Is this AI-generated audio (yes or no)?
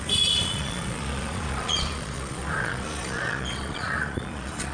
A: yes